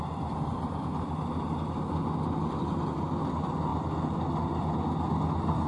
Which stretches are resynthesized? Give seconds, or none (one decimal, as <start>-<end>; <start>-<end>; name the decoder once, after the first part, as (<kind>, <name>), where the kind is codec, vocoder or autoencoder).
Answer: none